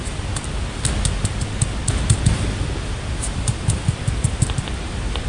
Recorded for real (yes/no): yes